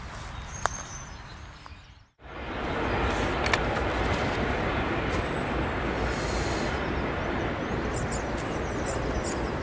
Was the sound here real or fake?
real